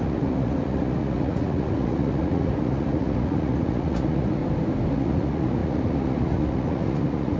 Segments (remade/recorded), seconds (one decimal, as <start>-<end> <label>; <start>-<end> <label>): 0.0-4.4 remade; 4.4-4.9 recorded; 4.9-7.4 remade